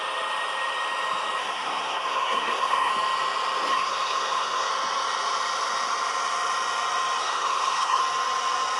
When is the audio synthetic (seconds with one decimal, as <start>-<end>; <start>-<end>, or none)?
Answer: 1.4-2.9; 3.7-4.7; 7.2-8.0